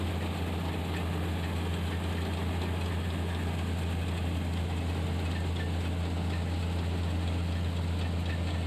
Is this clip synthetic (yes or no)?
no